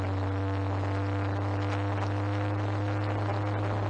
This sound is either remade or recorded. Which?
recorded